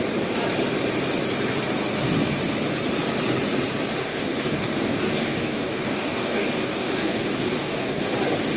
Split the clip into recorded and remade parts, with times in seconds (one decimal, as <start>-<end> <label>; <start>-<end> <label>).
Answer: 0.0-4.0 recorded; 4.0-8.0 remade; 8.0-8.6 recorded